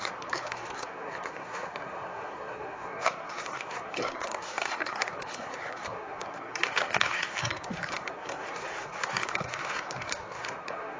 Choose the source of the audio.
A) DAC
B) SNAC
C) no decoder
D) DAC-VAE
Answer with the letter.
B